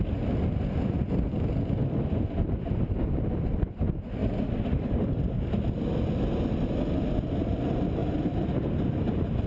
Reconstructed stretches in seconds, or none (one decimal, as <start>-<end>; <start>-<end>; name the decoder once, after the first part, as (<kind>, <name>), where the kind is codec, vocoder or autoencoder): none